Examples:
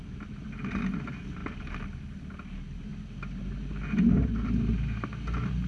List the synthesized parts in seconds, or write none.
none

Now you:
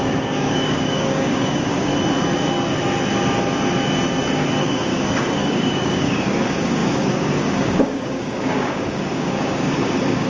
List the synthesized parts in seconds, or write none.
0.0-1.9 (codec, DAC); 4.6-10.3

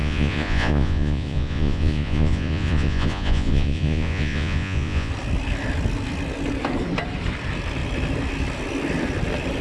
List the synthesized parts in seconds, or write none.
0.0-5.1 (vocoder, Vocos)

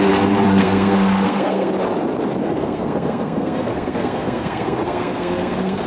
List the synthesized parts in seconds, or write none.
0.6-1.7 (codec, SNAC); 2.4-5.9

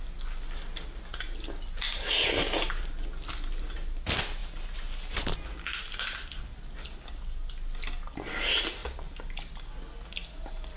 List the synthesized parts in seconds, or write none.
none

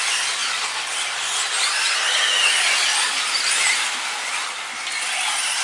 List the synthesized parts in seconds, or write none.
none

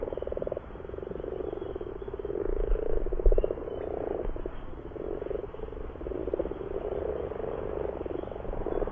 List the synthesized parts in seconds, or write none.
none